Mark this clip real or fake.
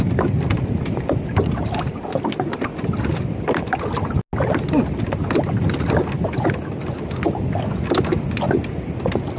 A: real